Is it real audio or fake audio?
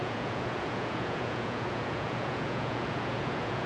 fake